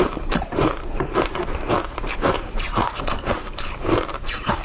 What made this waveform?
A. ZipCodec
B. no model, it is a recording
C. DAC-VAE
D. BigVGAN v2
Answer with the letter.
D